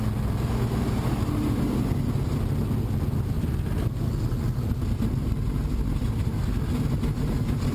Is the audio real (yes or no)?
yes